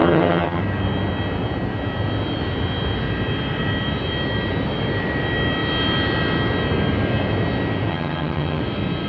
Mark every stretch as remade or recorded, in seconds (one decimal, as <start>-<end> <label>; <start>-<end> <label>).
0.0-0.6 remade; 0.6-7.9 recorded; 7.9-8.6 remade; 8.6-9.1 recorded